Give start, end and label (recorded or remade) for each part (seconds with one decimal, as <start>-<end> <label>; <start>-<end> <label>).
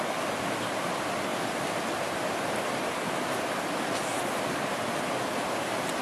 0.0-6.0 recorded